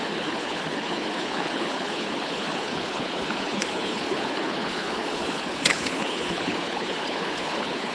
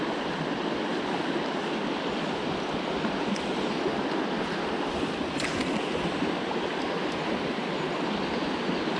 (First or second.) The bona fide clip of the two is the second